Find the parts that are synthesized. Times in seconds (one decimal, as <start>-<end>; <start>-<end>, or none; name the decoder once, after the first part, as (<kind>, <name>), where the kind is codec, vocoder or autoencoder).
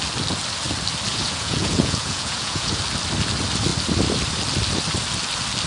1.1-2.8 (vocoder, Vocos)